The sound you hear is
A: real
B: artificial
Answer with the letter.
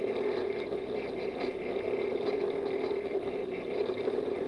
A